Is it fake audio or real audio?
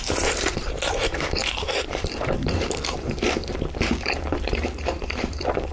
fake